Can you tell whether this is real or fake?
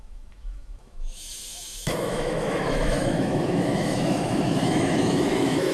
fake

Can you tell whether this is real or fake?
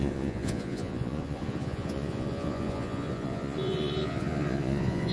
fake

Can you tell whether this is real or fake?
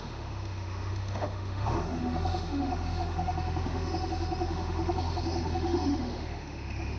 fake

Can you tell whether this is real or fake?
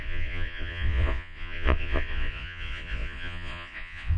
fake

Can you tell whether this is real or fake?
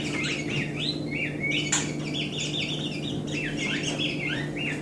real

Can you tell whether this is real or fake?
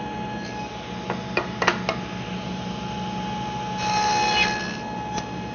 real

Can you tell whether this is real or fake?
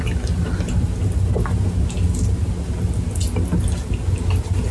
real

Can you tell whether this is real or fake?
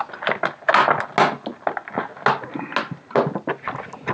real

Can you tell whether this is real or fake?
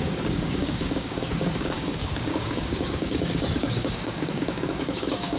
fake